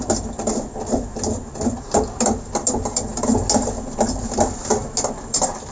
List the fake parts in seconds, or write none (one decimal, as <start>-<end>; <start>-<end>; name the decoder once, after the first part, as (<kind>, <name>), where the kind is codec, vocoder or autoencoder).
none